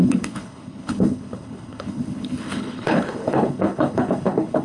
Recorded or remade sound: remade